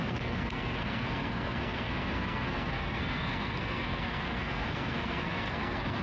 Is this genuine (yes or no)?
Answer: no